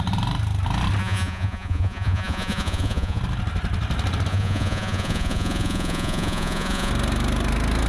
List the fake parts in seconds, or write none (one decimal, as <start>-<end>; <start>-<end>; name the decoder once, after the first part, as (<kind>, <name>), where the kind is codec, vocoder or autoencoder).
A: 1.0-3.2 (vocoder, Vocos); 4.3-6.9